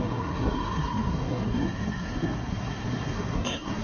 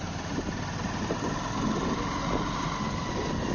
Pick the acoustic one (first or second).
second